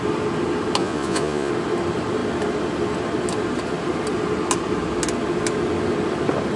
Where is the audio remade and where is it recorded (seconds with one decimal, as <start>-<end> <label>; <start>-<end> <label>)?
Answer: 0.0-0.8 recorded; 0.8-1.5 remade; 1.5-6.6 recorded